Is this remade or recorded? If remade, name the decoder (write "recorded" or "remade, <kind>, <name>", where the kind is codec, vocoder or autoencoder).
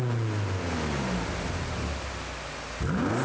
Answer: recorded